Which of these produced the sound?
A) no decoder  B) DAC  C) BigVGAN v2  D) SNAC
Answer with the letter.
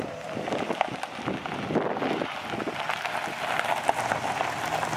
A